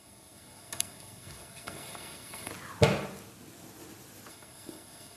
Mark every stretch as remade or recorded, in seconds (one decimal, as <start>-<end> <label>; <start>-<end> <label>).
0.0-2.5 remade; 2.5-4.3 recorded; 4.3-5.2 remade